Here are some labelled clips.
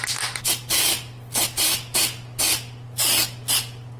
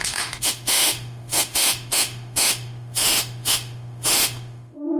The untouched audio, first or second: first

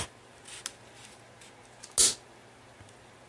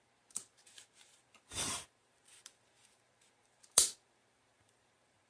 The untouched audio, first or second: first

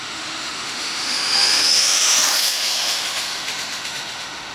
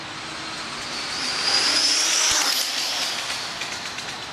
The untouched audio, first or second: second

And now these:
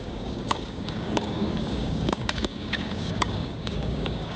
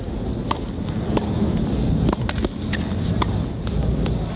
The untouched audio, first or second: second